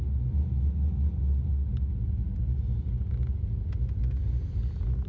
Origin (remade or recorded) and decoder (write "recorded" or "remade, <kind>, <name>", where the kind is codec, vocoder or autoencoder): recorded